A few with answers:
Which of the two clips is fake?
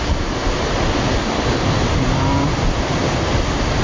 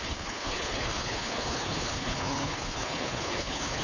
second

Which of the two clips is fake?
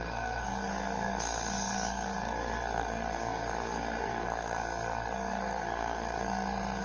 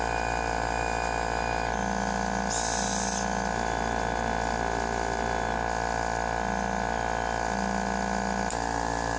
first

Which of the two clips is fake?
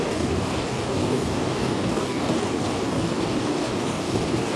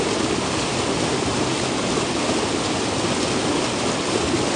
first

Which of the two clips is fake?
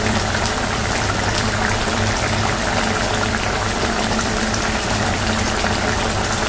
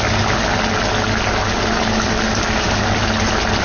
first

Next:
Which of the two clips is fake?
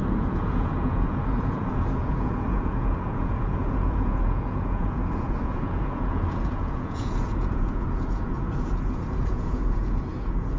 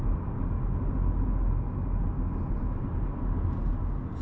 first